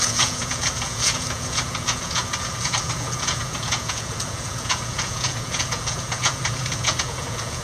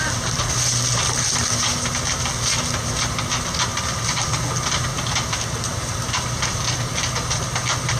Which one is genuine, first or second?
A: second